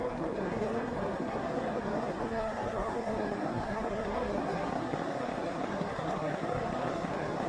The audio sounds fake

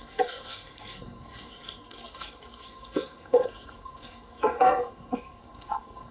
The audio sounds fake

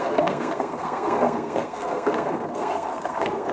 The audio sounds fake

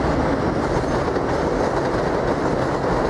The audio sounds real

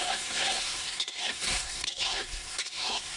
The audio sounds fake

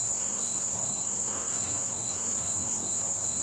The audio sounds fake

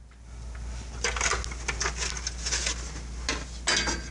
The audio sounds real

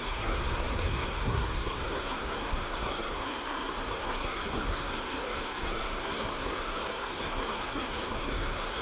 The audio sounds fake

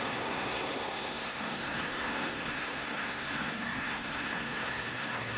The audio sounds fake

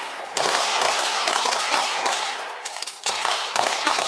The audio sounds fake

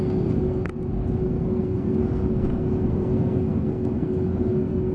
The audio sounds fake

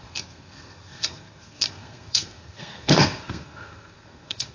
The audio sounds fake